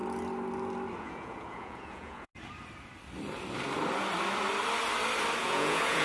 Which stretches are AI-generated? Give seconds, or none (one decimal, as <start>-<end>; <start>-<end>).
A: 1.0-2.3; 5.4-6.0